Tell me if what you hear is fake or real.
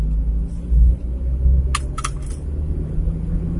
real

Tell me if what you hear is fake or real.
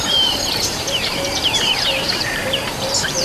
fake